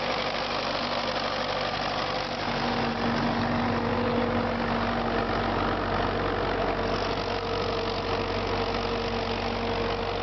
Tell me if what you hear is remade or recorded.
recorded